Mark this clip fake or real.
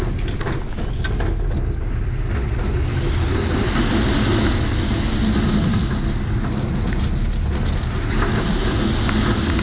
real